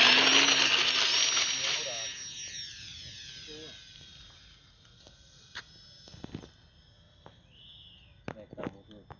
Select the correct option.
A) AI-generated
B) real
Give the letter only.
B